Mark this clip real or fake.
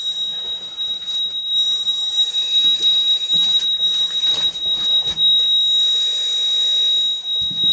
real